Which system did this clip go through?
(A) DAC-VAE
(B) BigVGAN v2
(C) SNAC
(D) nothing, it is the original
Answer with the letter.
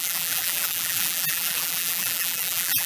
B